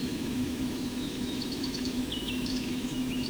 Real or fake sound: fake